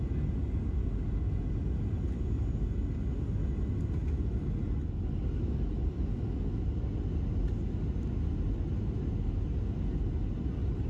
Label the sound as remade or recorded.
recorded